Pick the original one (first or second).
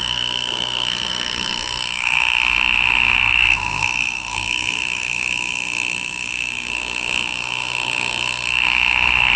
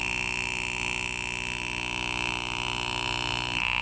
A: second